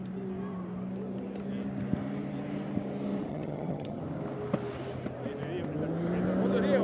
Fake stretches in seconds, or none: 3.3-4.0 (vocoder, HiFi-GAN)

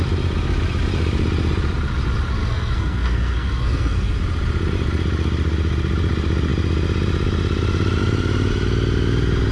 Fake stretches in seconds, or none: 2.4-4.2 (codec, SNAC)

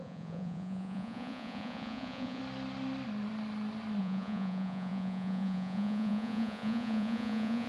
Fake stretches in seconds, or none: 0.0-2.4 (vocoder, Vocos); 4.0-7.7

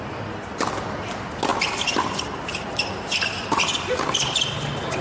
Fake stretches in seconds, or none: none

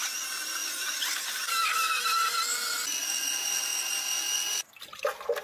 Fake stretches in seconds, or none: 0.6-2.4 (vocoder, BigVGAN v2)